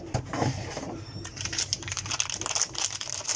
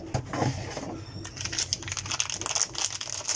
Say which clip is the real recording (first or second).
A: second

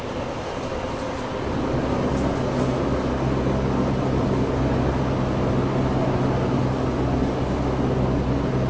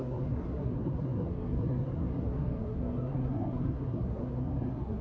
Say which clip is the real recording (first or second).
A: first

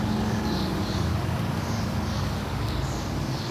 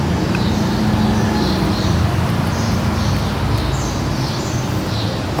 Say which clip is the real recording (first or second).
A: second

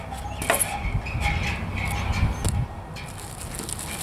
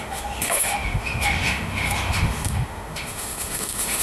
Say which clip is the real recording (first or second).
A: first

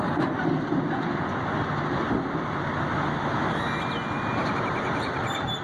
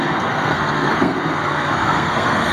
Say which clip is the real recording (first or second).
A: first